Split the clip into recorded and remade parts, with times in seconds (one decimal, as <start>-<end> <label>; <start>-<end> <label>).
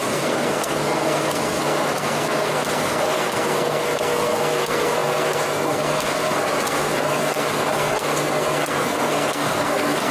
0.0-10.1 remade